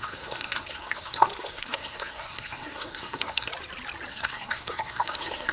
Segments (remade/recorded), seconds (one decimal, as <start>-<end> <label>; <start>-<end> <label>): 0.0-3.5 remade; 3.5-4.1 recorded; 4.1-5.5 remade